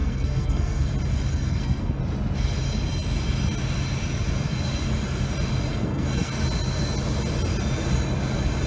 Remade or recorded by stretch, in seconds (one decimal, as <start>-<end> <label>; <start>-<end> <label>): 0.0-0.9 remade; 0.9-1.3 recorded; 1.3-2.0 remade; 2.0-5.7 recorded; 5.7-6.3 remade; 6.3-8.7 recorded